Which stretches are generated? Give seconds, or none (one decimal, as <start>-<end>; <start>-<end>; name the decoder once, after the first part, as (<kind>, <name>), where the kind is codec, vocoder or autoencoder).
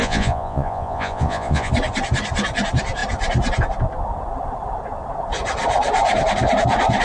0.0-1.7 (vocoder, Vocos)